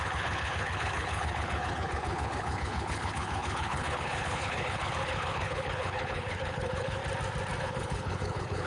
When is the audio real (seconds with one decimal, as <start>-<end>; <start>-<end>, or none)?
7.0-7.6